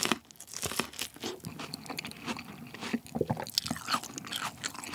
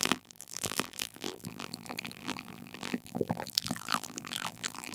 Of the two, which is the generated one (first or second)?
second